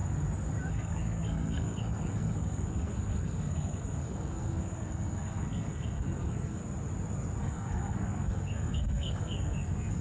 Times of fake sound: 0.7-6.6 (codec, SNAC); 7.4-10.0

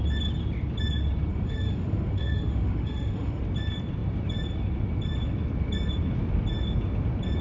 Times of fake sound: 1.3-3.4 (autoencoder, DAC-VAE)

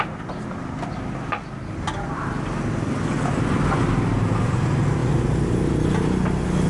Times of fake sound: 5.0-5.7 (vocoder, BigVGAN v2)

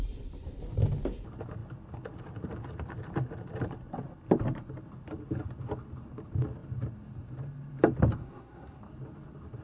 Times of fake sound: 8.2-8.8 (codec, SNAC)

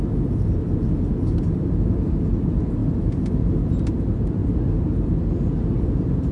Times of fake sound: none

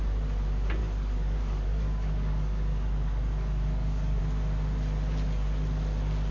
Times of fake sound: 0.8-4.2 (codec, DAC)